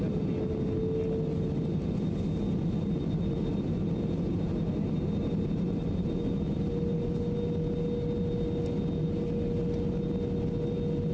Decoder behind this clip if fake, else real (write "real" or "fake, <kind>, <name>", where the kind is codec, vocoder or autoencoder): real